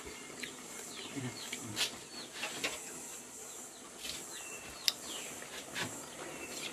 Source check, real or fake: real